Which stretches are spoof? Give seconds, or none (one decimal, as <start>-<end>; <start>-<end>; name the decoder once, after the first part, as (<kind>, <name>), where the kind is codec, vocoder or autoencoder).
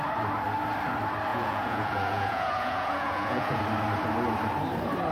1.3-3.6 (vocoder, Vocos)